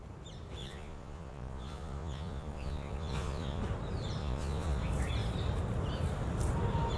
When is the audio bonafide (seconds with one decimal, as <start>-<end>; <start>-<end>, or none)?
0.0-0.6; 3.6-4.2; 4.8-7.0